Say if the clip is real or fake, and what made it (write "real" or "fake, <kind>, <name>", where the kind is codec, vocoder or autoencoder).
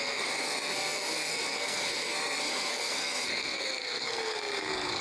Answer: fake, codec, SNAC